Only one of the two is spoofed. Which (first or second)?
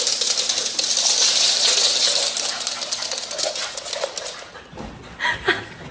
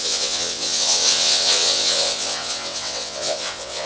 second